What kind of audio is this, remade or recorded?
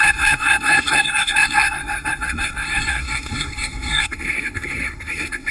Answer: remade